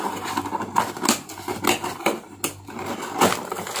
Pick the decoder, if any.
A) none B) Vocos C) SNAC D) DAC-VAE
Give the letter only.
A